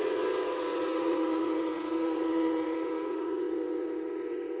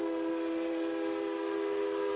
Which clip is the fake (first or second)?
first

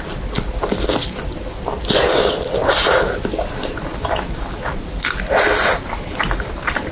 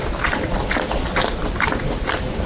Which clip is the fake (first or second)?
second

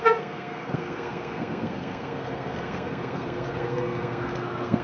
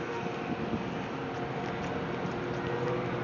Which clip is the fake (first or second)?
first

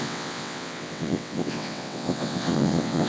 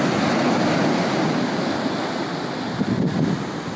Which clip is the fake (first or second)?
first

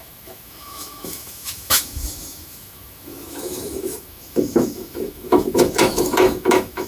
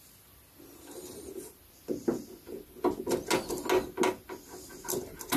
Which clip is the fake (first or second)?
first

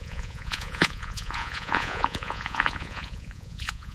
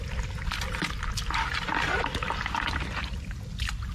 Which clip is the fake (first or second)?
first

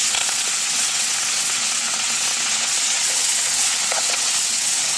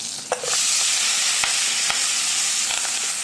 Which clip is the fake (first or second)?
first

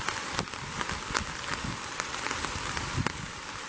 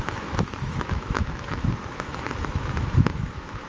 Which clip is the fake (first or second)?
second